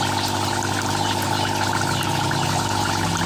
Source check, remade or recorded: recorded